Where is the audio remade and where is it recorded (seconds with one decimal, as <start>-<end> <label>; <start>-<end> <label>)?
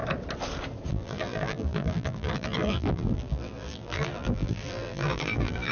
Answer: 0.0-0.9 recorded; 0.9-5.7 remade